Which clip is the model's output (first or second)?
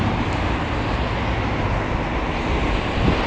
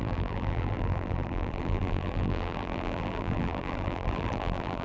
second